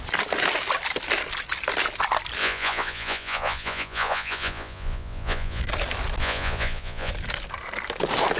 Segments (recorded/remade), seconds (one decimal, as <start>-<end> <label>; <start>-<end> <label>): 0.0-2.4 recorded; 2.4-5.6 remade; 5.6-6.2 recorded; 6.2-7.1 remade; 7.1-8.4 recorded